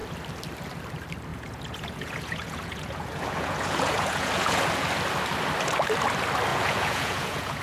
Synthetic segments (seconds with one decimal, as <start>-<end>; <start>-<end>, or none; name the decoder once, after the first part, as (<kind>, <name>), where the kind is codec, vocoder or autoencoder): 1.3-4.9 (vocoder, Vocos); 6.5-7.6